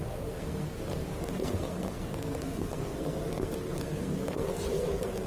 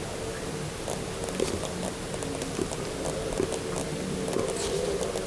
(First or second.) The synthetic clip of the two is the first